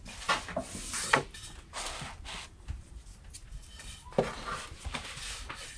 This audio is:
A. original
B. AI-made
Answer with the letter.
A